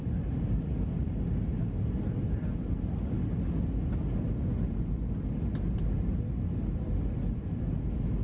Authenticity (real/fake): real